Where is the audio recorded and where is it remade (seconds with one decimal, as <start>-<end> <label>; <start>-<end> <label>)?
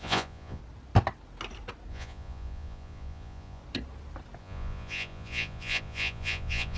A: 0.0-0.6 remade; 0.6-1.9 recorded; 1.9-3.6 remade; 3.6-4.4 recorded; 4.4-6.8 remade